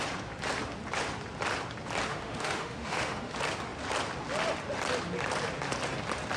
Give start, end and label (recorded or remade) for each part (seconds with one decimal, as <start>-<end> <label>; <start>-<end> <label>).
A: 0.0-2.1 recorded; 2.1-3.3 remade; 3.3-6.4 recorded